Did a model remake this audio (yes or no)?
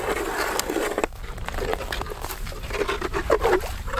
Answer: no